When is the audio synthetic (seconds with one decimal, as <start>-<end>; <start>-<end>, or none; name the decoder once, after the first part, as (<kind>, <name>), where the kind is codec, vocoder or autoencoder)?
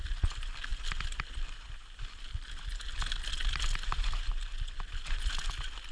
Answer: none